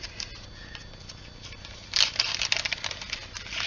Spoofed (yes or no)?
no